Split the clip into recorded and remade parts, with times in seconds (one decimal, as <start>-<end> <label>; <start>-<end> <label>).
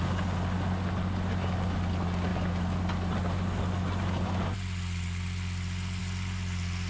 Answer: 0.0-6.9 recorded